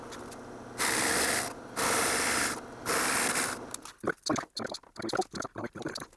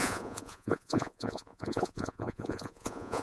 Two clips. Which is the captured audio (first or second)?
first